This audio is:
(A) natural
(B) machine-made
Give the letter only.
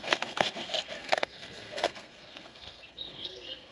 B